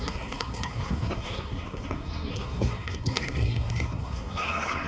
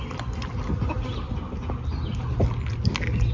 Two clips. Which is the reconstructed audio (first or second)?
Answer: first